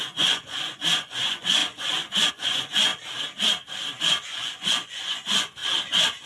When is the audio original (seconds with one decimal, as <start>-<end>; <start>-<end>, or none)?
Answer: 2.9-4.0; 5.6-6.3